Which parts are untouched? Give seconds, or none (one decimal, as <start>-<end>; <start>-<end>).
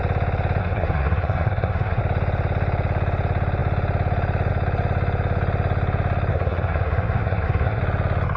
0.0-0.6; 2.0-6.3; 7.8-8.4